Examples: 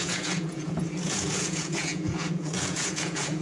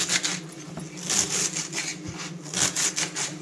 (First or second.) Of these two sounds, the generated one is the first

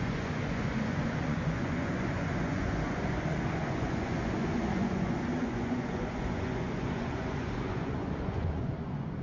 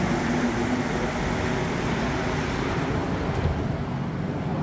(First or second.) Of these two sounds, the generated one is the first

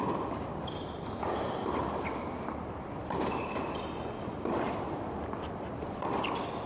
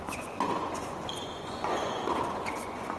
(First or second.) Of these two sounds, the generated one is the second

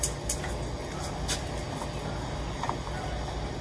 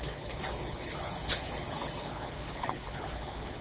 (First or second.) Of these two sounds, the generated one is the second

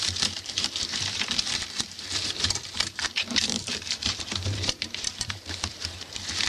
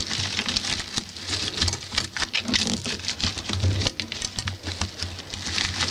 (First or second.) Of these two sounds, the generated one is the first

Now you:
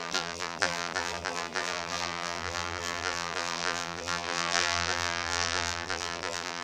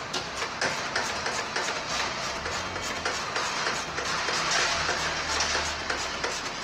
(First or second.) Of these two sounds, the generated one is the first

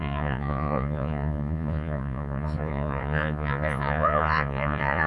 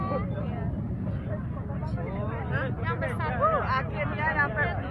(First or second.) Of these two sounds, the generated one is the first